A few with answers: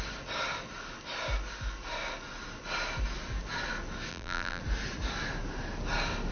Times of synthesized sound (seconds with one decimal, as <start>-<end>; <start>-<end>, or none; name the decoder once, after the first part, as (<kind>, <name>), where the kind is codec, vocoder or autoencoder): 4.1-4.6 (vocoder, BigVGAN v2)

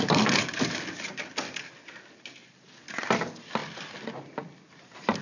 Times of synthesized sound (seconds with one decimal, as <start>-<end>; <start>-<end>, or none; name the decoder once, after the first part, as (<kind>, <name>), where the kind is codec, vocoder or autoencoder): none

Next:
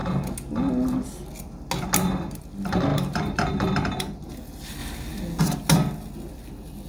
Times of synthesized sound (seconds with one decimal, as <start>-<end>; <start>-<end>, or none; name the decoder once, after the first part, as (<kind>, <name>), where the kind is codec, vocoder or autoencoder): 2.9-4.3 (vocoder, BigVGAN v2)

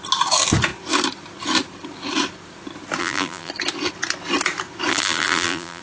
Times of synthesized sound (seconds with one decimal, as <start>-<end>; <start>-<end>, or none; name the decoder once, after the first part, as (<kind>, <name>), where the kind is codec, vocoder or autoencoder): 3.0-3.5 (vocoder, BigVGAN v2); 4.9-5.8

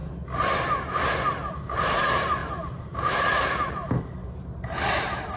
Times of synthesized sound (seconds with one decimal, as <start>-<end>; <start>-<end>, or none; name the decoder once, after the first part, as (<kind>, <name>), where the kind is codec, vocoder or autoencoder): 2.4-3.7 (vocoder, BigVGAN v2); 4.2-5.0